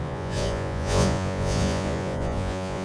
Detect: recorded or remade remade